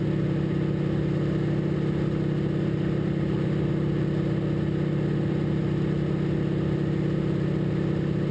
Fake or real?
real